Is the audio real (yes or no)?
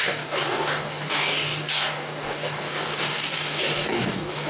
no